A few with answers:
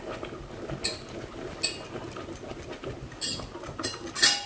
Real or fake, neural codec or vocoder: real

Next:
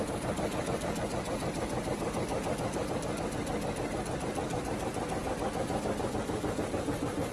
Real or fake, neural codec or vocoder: real